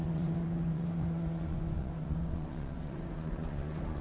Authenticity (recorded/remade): remade